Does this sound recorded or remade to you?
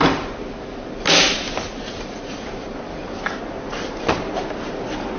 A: recorded